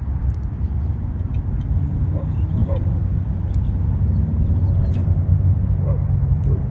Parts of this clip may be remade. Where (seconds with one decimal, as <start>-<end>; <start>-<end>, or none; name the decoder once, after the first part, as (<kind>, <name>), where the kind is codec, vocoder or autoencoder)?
2.6-3.7 (vocoder, BigVGAN v2); 5.0-6.7